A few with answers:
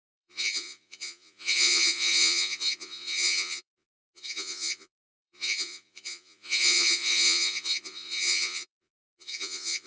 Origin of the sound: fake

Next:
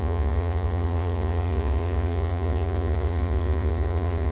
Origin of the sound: fake